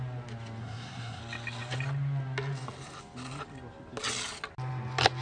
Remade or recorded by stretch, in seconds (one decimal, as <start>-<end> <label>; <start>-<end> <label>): 0.0-0.6 recorded; 0.6-1.2 remade; 1.2-5.2 recorded